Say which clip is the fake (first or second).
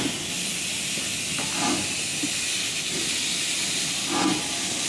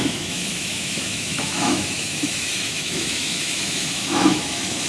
second